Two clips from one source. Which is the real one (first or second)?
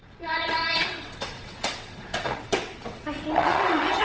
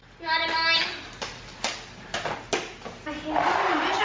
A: second